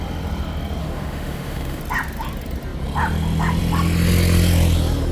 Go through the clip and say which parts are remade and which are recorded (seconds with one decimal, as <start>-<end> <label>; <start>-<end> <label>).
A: 0.0-0.8 recorded; 0.8-1.8 remade; 1.8-5.1 recorded